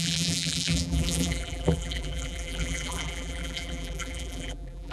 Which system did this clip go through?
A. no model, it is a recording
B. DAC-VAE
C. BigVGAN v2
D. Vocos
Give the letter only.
C